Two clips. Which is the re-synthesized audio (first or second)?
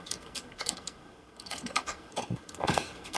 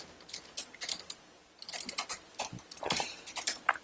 first